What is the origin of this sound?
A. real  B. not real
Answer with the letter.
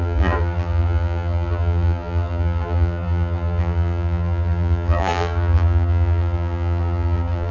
B